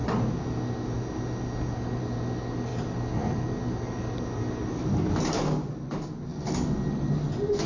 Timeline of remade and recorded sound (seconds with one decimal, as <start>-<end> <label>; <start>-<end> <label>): 0.0-7.7 recorded